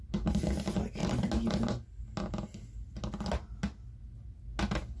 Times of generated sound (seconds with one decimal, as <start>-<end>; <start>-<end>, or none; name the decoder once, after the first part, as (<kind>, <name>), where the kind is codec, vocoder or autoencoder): none